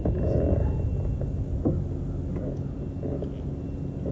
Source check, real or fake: real